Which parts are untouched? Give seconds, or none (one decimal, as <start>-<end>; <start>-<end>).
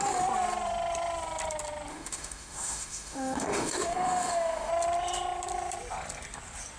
0.0-1.9; 4.7-6.8